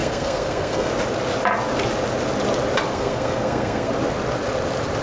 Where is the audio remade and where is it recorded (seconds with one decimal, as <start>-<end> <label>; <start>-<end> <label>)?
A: 0.0-0.9 remade; 0.9-2.9 recorded; 2.9-3.9 remade; 3.9-5.0 recorded